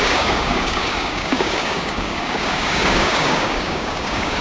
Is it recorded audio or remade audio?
remade